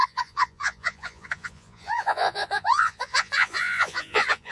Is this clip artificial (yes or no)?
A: yes